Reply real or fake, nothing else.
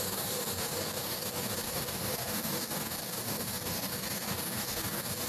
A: fake